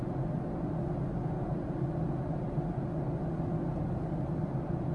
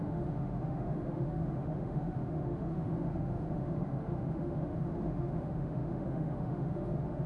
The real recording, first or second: first